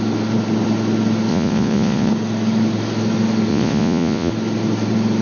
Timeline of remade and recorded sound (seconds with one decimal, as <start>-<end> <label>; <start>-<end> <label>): 0.0-1.3 recorded; 1.3-2.1 remade; 2.1-3.5 recorded; 3.5-4.3 remade; 4.3-5.2 recorded